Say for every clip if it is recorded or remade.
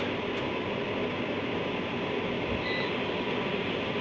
recorded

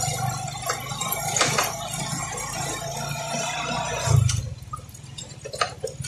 recorded